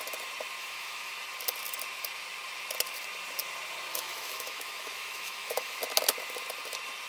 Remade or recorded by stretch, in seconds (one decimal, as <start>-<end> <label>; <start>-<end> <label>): 0.0-0.6 recorded; 0.6-1.1 remade; 1.1-3.9 recorded; 3.9-5.8 remade; 5.8-7.1 recorded